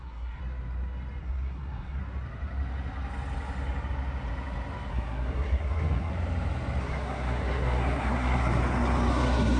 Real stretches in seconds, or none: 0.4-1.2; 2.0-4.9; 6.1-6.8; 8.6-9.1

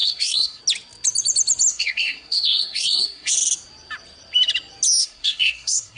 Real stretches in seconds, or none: 0.6-1.7; 3.3-5.0

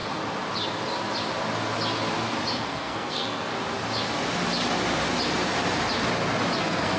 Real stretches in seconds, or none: 0.0-2.6; 3.5-6.6

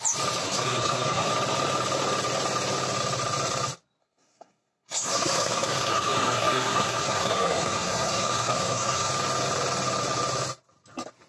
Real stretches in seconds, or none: 0.0-0.4; 1.3-4.0; 9.1-11.3

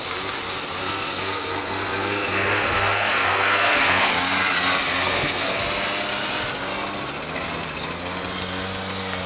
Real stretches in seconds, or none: 0.0-0.8; 4.1-5.0; 5.6-9.3